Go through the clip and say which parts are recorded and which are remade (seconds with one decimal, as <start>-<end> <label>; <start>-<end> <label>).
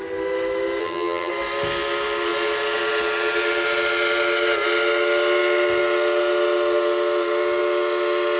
0.0-0.8 recorded; 0.8-1.3 remade; 1.3-8.4 recorded